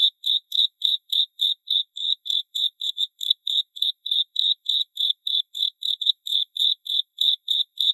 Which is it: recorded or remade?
remade